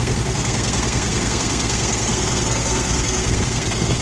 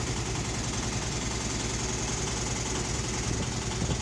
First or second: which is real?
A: second